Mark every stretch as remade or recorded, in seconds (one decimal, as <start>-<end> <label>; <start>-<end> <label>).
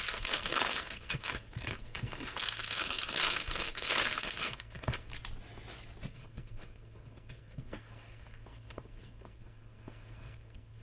0.0-5.1 remade; 5.1-6.1 recorded; 6.1-10.8 remade